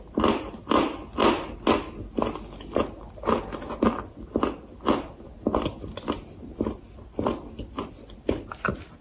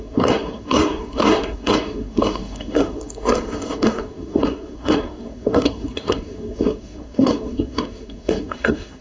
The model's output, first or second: second